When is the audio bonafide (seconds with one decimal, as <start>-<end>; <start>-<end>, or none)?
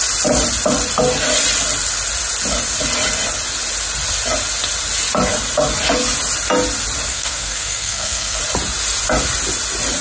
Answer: 0.0-7.1; 8.4-10.0